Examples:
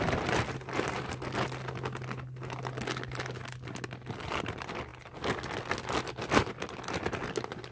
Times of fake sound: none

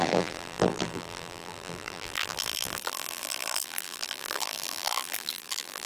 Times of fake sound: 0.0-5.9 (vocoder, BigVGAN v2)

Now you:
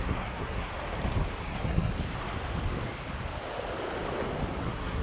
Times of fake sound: 0.0-0.7 (codec, SNAC); 1.4-1.9; 4.6-5.0